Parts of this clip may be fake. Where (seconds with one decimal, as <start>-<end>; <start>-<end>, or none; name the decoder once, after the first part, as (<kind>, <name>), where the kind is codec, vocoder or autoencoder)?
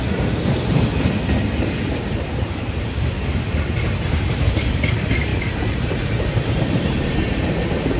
0.0-0.9 (vocoder, BigVGAN v2); 2.1-8.0